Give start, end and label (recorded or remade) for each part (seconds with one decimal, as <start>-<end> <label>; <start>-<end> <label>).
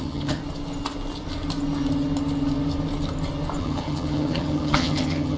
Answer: 0.0-0.4 remade; 0.4-3.6 recorded; 3.6-5.4 remade